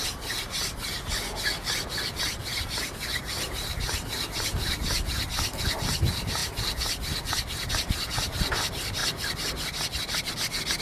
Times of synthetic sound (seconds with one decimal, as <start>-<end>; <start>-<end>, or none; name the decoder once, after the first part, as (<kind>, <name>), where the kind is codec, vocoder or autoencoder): 2.4-2.9 (vocoder, BigVGAN v2)